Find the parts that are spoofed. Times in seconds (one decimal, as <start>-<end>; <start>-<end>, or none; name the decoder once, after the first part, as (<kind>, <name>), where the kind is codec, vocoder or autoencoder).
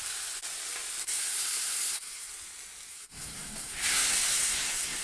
1.0-2.3 (codec, SNAC); 2.9-5.0